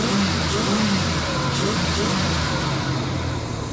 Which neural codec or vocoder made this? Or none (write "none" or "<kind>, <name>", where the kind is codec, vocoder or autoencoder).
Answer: none